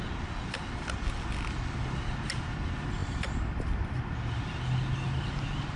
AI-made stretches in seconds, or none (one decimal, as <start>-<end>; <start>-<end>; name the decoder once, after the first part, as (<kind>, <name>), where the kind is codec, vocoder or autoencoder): 3.0-4.0 (vocoder, BigVGAN v2)